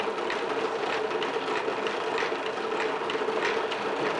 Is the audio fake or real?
real